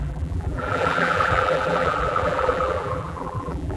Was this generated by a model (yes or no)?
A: yes